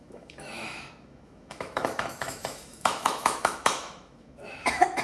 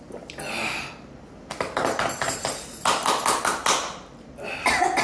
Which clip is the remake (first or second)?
first